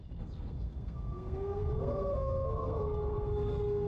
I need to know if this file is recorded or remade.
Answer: remade